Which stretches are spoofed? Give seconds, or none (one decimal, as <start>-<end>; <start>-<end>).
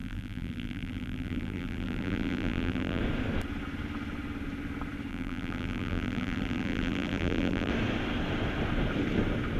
0.0-3.0; 5.1-7.7